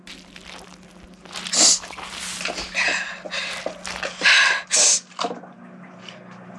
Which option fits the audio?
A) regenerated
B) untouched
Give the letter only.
B